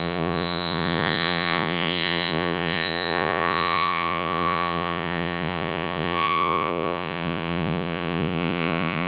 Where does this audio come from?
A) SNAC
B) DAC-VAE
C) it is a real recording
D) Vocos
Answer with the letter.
D